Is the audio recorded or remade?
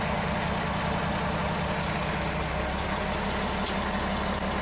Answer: recorded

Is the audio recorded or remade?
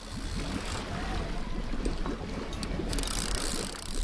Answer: recorded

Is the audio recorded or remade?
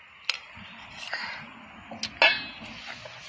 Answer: recorded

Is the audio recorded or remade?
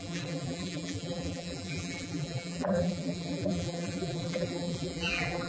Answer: remade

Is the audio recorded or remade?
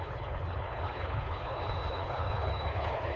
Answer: remade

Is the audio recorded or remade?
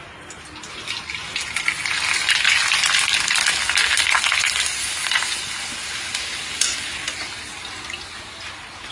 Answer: recorded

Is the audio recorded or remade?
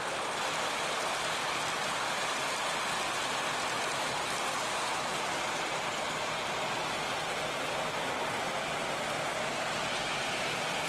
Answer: recorded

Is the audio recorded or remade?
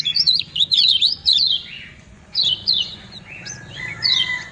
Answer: remade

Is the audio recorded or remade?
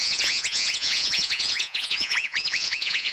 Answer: remade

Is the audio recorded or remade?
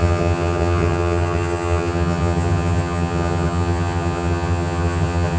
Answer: remade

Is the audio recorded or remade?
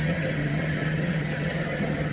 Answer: remade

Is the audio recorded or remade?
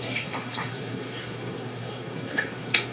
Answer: remade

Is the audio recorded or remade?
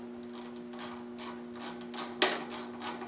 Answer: recorded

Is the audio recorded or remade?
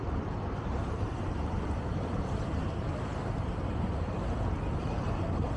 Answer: remade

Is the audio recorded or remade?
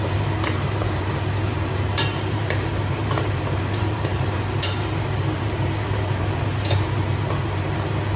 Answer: remade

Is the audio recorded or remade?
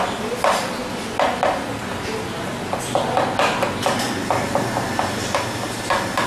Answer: recorded